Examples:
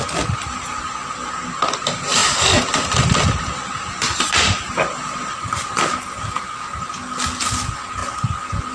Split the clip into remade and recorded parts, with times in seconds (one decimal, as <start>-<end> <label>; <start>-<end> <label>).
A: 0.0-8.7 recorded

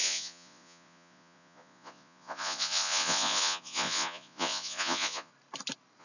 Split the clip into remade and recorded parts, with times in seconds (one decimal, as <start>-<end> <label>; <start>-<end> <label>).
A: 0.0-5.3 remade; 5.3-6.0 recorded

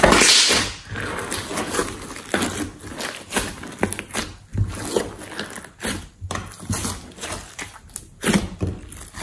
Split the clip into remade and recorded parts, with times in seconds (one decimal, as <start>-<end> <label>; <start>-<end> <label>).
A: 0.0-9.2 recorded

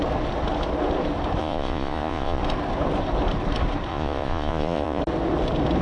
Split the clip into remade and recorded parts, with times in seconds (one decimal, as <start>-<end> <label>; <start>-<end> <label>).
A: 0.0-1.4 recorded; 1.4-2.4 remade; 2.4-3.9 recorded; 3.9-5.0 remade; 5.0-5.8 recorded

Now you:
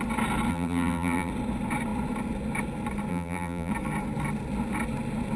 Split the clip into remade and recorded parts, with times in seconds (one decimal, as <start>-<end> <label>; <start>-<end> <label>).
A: 0.0-0.5 recorded; 0.5-1.3 remade; 1.3-3.1 recorded; 3.1-3.7 remade; 3.7-5.4 recorded

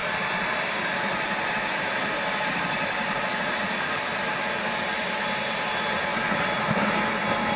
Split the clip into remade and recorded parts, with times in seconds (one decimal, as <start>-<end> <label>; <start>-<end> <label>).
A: 0.0-7.6 recorded

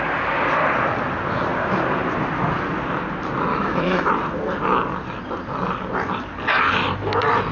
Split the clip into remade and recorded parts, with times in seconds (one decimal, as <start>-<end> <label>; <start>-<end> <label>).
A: 0.0-3.5 recorded; 3.5-4.1 remade; 4.1-7.5 recorded